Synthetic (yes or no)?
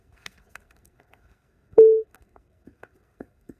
yes